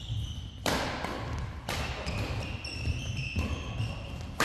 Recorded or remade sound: recorded